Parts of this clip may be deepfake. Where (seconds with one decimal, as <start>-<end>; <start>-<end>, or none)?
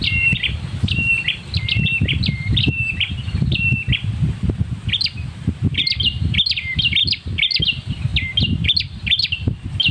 0.0-7.0; 7.6-9.9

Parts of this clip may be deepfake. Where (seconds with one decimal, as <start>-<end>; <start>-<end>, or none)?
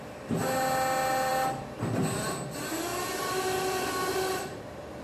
2.9-5.0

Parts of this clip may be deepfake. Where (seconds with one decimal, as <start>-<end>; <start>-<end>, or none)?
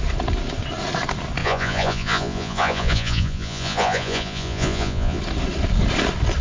1.4-5.2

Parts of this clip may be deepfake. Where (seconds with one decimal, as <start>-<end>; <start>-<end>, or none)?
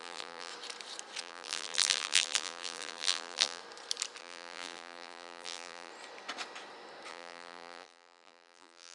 0.0-0.5; 1.2-3.6; 4.2-5.9; 7.1-8.9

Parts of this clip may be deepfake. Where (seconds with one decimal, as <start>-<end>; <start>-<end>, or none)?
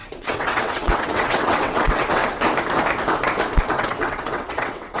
0.0-2.2; 3.7-5.0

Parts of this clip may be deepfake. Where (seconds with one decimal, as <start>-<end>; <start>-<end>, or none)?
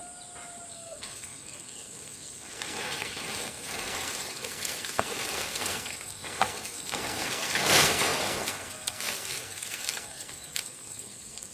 0.7-11.5